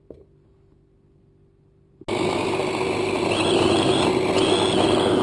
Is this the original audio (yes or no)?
yes